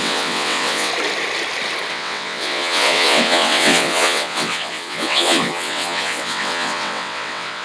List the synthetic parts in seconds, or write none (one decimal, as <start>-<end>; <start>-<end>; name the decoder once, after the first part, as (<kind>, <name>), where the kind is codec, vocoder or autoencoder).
0.0-0.9 (vocoder, WaveNeXt); 1.9-7.6